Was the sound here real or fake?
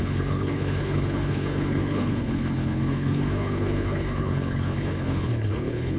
fake